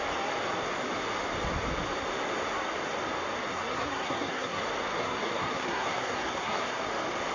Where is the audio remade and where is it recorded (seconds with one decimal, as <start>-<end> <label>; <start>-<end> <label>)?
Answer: 0.0-3.5 recorded; 3.5-4.6 remade; 4.6-5.0 recorded; 5.0-6.8 remade; 6.8-7.3 recorded